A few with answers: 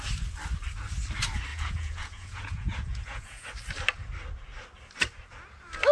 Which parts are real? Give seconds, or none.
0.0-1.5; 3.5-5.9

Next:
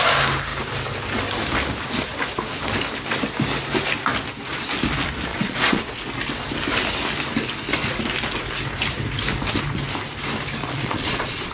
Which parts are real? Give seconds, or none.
0.0-5.3; 5.8-10.6

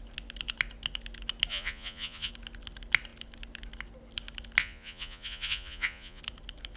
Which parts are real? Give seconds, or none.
0.0-1.5; 2.3-4.6; 6.2-6.8